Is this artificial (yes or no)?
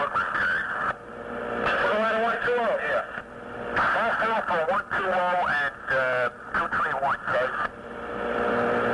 no